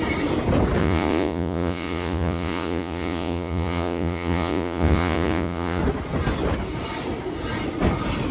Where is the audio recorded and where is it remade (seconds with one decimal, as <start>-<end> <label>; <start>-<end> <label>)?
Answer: 0.0-0.8 recorded; 0.8-5.8 remade; 5.8-8.3 recorded